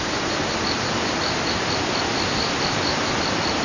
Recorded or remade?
recorded